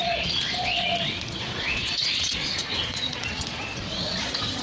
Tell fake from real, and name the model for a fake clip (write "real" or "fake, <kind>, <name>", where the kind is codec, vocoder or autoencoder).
fake, vocoder, Vocos